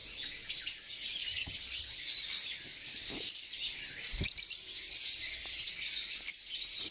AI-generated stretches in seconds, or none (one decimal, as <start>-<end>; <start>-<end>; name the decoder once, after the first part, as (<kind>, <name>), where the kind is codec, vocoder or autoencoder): 1.3-2.0 (vocoder, HiFi-GAN)